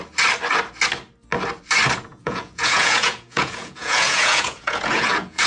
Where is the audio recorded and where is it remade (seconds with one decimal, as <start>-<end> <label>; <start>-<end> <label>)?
0.0-2.1 recorded; 2.1-5.5 remade